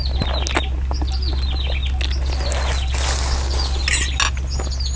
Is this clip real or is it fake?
real